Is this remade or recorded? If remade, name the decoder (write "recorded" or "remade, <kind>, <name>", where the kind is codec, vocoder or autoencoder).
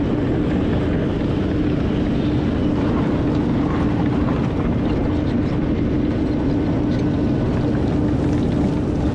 recorded